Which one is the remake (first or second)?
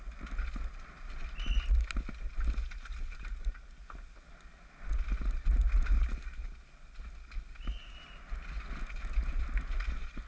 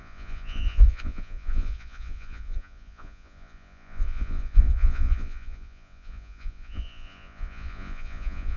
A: second